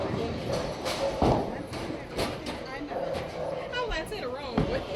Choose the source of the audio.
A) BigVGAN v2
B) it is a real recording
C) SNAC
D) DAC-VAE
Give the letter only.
B